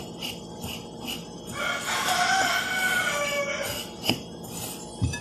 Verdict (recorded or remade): recorded